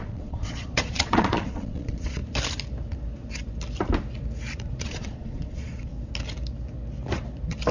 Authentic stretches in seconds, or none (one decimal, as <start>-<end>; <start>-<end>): 2.2-4.8; 5.9-7.7